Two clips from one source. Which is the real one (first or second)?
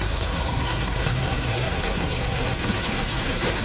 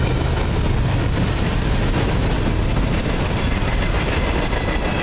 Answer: second